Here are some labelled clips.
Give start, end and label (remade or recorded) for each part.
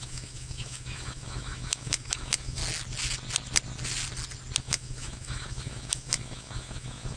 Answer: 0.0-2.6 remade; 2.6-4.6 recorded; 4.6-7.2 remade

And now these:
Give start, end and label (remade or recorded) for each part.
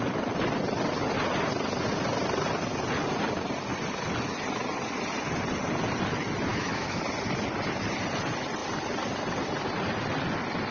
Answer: 0.0-6.5 recorded; 6.5-7.0 remade; 7.0-10.7 recorded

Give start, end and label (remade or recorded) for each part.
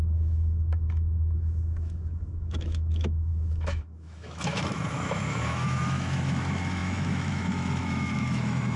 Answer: 0.0-8.8 remade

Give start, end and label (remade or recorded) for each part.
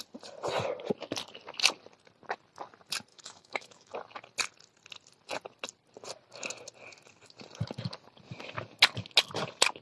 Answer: 0.0-3.1 recorded; 3.1-3.9 remade; 3.9-9.8 recorded